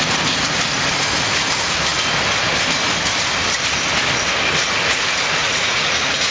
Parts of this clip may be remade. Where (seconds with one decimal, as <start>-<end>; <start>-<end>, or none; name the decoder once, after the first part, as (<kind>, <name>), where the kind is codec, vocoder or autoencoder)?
5.4-6.3 (vocoder, Vocos)